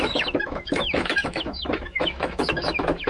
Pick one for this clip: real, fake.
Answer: fake